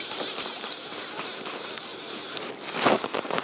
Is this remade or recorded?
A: recorded